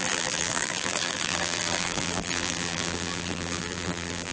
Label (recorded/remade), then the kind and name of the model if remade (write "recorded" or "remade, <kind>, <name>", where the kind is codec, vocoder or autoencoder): remade, vocoder, BigVGAN v2